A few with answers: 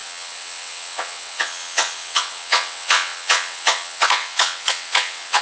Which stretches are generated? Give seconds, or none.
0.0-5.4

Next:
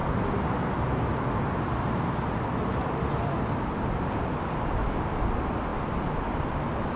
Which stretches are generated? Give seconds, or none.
none

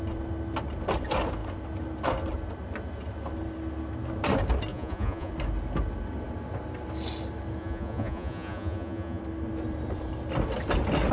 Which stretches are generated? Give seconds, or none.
4.7-5.3; 7.6-9.2

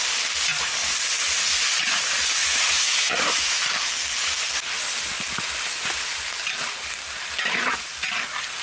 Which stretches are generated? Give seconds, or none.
2.4-3.6